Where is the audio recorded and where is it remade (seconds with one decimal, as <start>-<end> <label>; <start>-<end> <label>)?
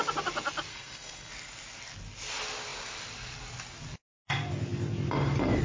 0.0-0.7 recorded; 0.7-1.3 remade; 1.3-5.6 recorded